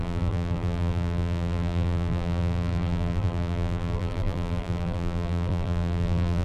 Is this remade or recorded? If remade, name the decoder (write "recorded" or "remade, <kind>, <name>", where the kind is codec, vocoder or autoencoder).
remade, vocoder, BigVGAN v2